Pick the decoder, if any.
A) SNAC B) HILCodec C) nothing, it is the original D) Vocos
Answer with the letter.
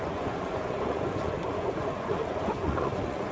D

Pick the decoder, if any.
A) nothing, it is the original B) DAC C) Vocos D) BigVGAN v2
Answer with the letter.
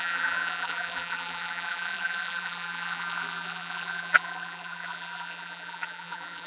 D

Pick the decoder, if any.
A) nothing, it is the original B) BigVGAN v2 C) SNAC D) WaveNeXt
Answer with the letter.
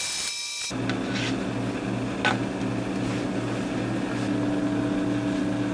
A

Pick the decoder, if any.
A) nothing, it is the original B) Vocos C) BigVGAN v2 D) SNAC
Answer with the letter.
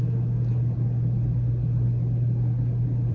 A